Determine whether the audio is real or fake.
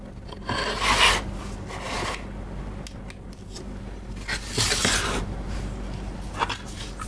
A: real